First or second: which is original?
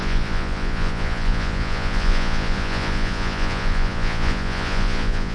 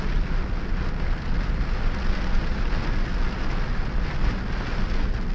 second